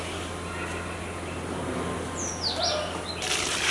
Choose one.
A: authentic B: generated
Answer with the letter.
A